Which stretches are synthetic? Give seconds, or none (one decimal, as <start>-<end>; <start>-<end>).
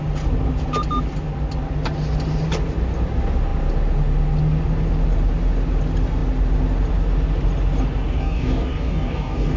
8.2-9.6